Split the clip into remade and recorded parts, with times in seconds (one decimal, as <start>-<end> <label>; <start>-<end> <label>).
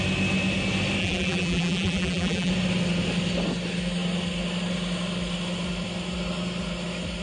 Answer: 0.0-1.0 recorded; 1.0-2.5 remade; 2.5-7.2 recorded